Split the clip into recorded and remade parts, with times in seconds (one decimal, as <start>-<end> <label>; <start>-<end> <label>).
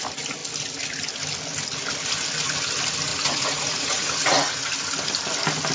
0.0-3.1 recorded; 3.1-4.7 remade; 4.7-5.7 recorded